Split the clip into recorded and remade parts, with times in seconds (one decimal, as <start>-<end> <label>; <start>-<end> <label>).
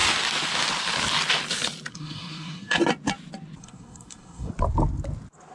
0.0-1.9 recorded; 1.9-2.8 remade; 2.8-3.6 recorded; 3.6-4.5 remade; 4.5-5.5 recorded